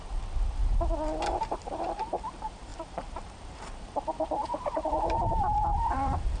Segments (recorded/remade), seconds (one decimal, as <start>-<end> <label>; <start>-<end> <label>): 0.0-0.6 remade; 0.6-1.4 recorded; 1.4-6.4 remade